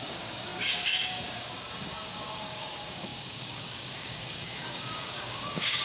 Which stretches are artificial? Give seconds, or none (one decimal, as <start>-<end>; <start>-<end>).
0.0-5.8